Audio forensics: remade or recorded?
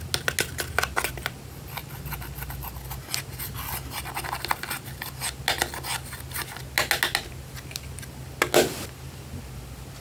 recorded